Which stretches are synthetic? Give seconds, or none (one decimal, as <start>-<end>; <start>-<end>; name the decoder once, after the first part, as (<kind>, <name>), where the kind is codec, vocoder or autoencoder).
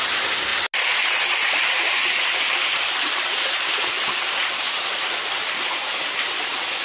none